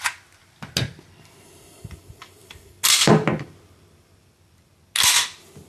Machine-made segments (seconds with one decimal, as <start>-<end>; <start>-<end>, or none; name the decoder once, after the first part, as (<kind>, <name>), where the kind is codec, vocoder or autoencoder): none